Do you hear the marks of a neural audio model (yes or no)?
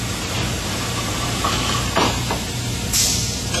yes